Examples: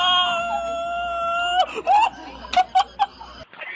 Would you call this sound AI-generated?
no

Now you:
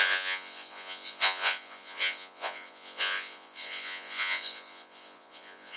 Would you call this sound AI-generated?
yes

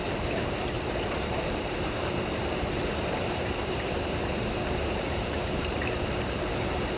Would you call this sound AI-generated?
yes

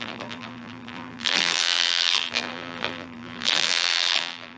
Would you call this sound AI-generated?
yes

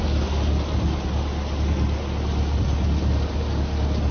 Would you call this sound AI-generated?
no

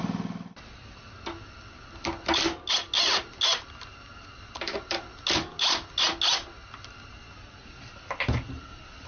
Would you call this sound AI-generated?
no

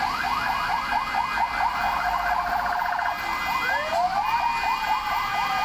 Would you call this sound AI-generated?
no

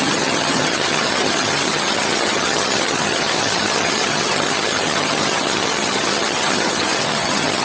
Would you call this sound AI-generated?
yes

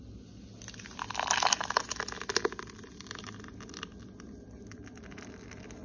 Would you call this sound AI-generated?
no